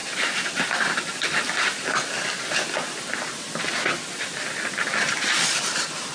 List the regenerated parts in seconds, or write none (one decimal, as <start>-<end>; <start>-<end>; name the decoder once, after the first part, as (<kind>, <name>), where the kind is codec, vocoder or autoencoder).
none